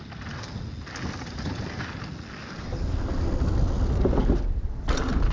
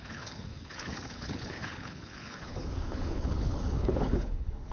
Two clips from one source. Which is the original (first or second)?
first